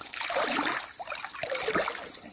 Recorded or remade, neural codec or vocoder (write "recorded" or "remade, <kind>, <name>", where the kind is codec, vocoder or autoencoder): recorded